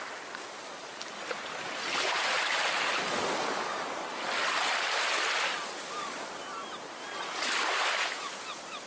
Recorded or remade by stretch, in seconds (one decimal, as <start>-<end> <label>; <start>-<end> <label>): 0.0-0.8 recorded; 0.8-3.0 remade; 3.0-8.9 recorded